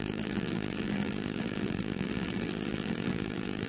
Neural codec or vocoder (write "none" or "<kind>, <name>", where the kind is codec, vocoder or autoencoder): vocoder, BigVGAN v2